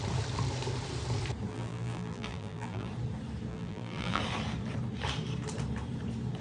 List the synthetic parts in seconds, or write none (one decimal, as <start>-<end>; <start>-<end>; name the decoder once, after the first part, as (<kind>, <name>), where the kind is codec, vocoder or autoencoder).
1.5-2.9 (vocoder, BigVGAN v2); 3.5-4.2